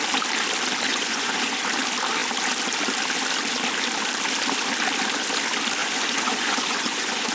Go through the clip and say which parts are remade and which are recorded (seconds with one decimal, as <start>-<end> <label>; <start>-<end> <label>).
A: 0.0-0.9 recorded; 0.9-1.6 remade; 1.6-5.8 recorded; 5.8-7.3 remade

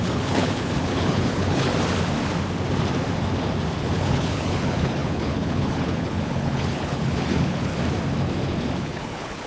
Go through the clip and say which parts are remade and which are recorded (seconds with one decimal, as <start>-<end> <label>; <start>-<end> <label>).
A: 0.0-1.7 remade; 1.7-3.8 recorded; 3.8-7.7 remade; 7.7-8.8 recorded; 8.8-9.5 remade